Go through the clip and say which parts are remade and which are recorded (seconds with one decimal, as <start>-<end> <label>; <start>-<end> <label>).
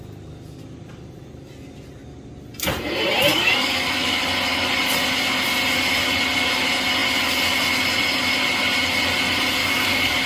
0.0-3.3 recorded; 3.3-4.2 remade; 4.2-9.6 recorded; 9.6-10.3 remade